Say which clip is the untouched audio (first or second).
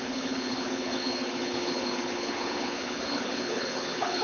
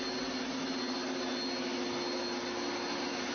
second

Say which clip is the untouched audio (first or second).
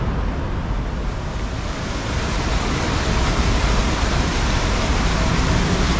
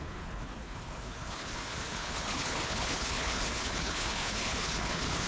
first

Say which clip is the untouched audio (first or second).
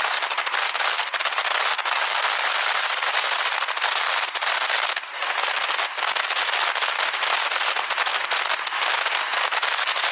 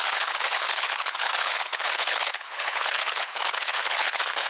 first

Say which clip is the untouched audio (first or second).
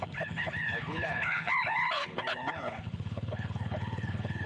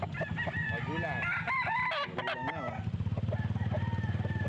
second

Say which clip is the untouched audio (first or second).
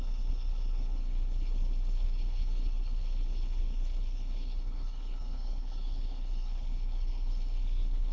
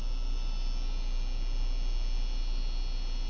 second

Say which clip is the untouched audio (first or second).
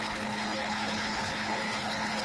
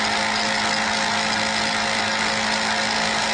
second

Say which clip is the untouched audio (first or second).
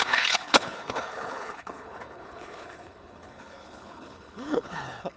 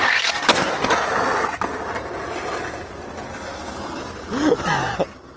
second